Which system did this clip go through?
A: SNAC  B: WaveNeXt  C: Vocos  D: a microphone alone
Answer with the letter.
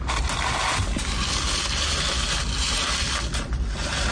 D